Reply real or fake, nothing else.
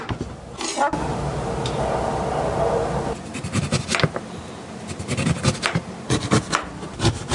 real